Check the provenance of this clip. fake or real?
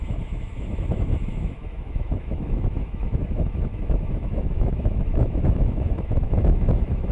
fake